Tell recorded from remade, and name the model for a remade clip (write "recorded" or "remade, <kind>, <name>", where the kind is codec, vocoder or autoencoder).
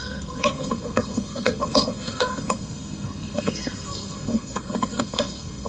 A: remade, codec, SNAC